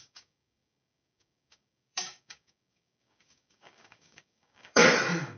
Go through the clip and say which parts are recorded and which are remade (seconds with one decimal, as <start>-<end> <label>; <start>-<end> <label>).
0.0-4.8 remade; 4.8-5.4 recorded